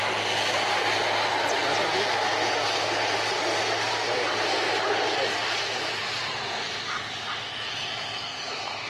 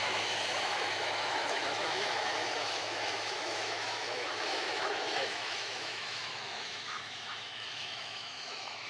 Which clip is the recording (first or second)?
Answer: first